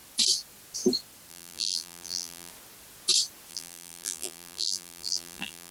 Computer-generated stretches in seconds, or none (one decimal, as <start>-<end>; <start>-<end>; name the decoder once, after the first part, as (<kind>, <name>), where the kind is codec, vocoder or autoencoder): 1.3-2.5 (vocoder, BigVGAN v2); 3.5-5.7